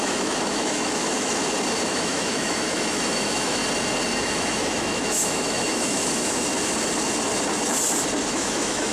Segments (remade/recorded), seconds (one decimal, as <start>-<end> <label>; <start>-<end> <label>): 0.0-1.4 remade; 1.4-1.9 recorded; 1.9-3.6 remade; 3.6-4.2 recorded; 4.2-6.5 remade; 6.5-8.3 recorded; 8.3-8.9 remade